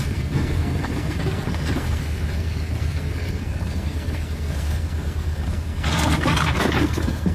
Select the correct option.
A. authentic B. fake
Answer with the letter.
B